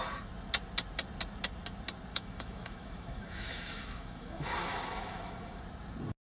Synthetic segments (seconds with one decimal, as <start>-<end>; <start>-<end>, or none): 2.1-5.6